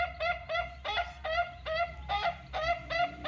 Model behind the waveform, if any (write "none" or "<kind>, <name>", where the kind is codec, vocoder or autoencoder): vocoder, BigVGAN v2